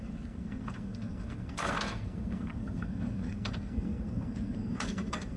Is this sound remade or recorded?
remade